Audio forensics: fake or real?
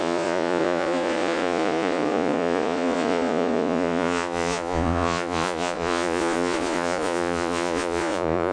fake